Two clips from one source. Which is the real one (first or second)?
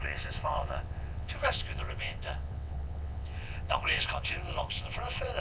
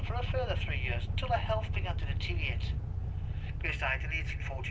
second